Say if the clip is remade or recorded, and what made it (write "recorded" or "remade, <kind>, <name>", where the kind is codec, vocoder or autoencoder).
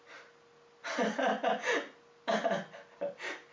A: recorded